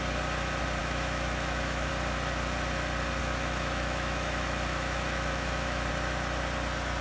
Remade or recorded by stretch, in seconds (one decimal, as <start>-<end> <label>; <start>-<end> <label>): 0.0-0.8 recorded; 0.8-1.9 remade; 1.9-3.2 recorded; 3.2-5.9 remade; 5.9-7.0 recorded